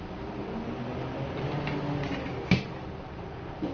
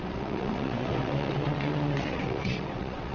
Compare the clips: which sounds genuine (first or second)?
first